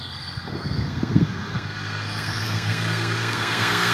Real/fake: fake